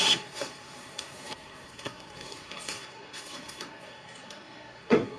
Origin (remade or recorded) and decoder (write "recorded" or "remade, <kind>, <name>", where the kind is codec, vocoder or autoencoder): remade, codec, SNAC